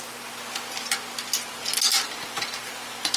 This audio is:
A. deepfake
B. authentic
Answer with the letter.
B